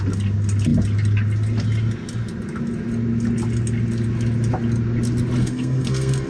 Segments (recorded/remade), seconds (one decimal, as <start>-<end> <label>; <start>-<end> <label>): 0.0-5.4 recorded; 5.4-6.3 remade